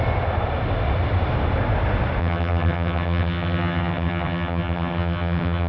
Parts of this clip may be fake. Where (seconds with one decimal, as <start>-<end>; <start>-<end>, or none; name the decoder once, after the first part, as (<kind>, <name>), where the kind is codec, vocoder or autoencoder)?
2.2-5.7 (vocoder, HiFi-GAN)